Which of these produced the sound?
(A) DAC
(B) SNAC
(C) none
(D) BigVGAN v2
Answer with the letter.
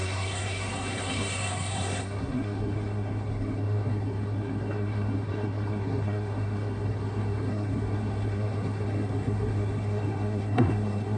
B